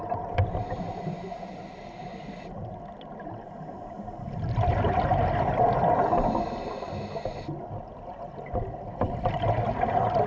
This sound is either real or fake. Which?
real